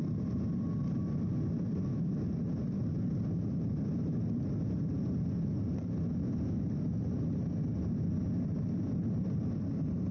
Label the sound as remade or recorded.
recorded